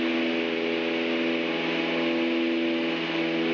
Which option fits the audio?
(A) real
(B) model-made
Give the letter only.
A